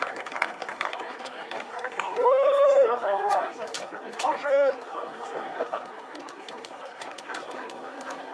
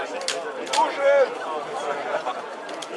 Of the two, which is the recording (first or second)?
second